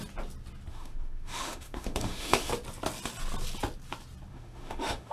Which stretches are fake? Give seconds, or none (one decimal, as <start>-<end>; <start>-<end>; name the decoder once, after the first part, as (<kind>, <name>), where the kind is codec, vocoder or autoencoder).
0.7-2.5 (autoencoder, DAC-VAE); 4.3-5.1